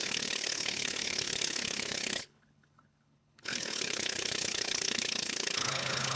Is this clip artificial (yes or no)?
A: yes